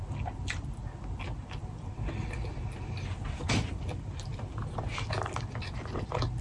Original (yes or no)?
yes